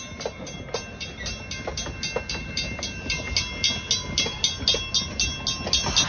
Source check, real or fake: real